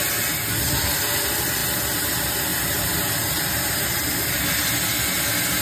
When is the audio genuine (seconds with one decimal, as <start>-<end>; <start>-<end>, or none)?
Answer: 0.0-2.5; 4.3-5.6